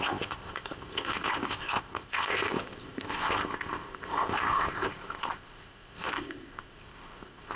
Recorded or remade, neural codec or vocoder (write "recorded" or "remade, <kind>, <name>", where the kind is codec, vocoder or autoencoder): remade, codec, ZipCodec